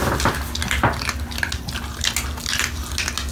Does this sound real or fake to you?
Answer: real